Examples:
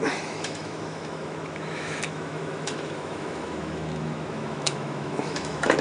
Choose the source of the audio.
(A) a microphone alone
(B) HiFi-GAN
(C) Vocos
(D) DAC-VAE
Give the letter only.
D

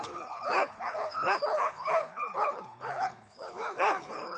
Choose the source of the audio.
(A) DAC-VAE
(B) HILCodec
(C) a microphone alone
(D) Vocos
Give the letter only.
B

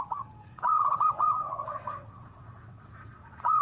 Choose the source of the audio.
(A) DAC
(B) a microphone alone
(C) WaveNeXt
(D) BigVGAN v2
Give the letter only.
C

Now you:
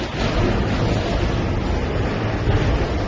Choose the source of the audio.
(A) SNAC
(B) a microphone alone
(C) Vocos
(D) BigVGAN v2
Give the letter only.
B